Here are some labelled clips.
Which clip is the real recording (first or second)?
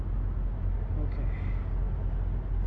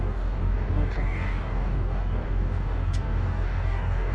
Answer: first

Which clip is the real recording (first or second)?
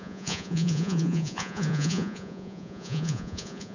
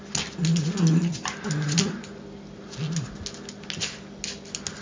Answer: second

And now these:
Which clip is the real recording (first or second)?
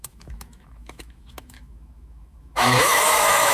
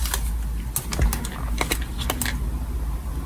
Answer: second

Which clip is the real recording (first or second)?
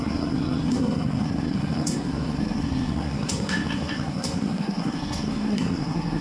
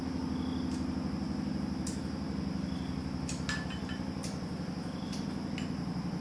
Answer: second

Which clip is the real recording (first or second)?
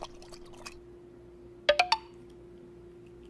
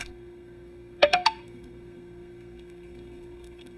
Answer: first